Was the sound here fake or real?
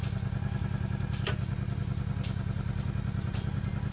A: real